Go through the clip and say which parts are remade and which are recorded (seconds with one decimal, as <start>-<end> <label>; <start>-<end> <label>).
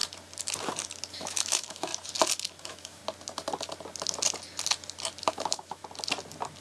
0.0-1.1 recorded; 1.1-1.9 remade; 1.9-2.6 recorded; 2.6-3.0 remade; 3.0-5.2 recorded; 5.2-5.8 remade; 5.8-6.6 recorded